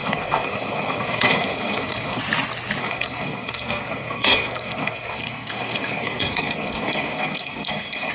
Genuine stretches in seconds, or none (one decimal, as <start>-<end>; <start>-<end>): 2.2-2.8

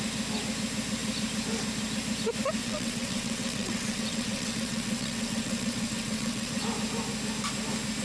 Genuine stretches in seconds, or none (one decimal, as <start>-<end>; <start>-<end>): 0.0-2.6; 6.6-8.0

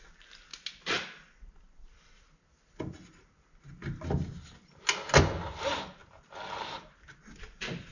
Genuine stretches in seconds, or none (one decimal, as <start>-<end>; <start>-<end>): 0.0-7.9

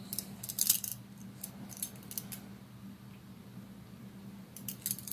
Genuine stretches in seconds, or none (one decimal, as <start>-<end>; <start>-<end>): 0.0-5.1

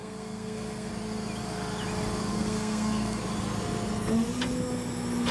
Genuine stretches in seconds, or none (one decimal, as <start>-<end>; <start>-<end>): 0.9-2.3; 3.2-5.3

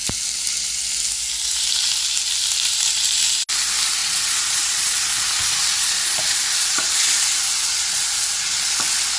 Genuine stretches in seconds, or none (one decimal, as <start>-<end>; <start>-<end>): 0.0-4.0; 8.6-9.2

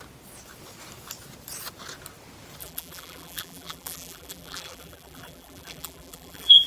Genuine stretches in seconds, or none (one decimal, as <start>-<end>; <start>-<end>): 0.0-2.6

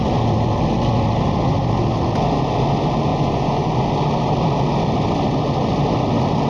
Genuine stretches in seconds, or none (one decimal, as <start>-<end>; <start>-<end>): 0.0-3.1; 3.8-6.5